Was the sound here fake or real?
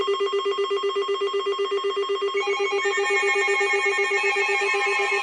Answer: real